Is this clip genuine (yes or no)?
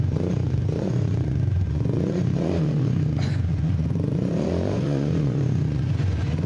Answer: no